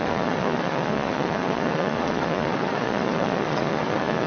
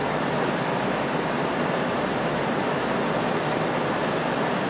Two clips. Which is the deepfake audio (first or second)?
first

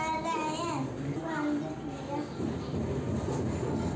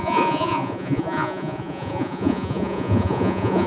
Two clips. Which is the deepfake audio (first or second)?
second